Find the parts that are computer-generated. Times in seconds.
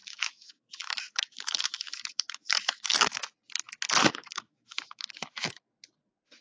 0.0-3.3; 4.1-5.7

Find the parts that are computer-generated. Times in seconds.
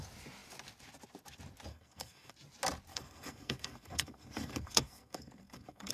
1.7-2.3; 2.9-5.9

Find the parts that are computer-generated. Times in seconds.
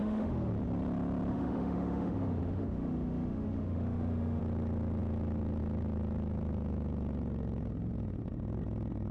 0.0-0.5; 1.3-4.4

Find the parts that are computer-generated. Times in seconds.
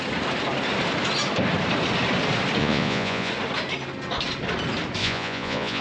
2.6-3.3; 5.0-5.8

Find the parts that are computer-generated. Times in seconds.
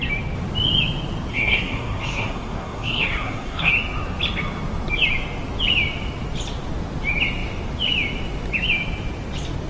1.3-3.7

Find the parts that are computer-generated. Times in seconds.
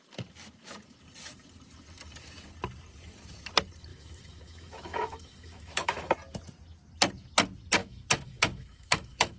3.9-6.1; 7.8-9.4